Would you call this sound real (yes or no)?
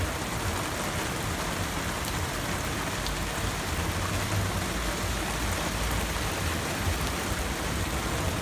yes